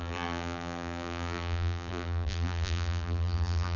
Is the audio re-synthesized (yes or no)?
yes